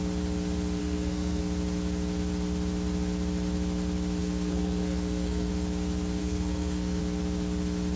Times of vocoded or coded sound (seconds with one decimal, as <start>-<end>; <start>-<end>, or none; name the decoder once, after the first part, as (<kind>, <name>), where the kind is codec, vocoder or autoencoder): 0.8-1.4 (codec, SNAC); 4.2-5.5; 6.2-7.0